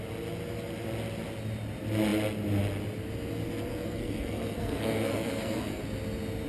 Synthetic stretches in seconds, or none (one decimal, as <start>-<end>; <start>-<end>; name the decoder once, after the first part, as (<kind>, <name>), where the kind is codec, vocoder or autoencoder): 3.7-5.8 (codec, SNAC)